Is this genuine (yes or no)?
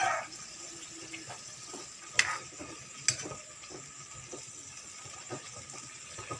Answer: yes